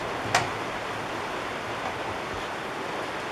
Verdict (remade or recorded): recorded